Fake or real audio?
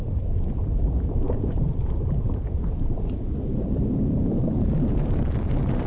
fake